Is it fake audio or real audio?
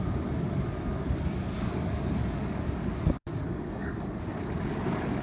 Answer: fake